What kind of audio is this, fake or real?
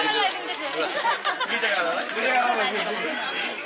real